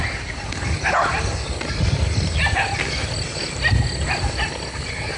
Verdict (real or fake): real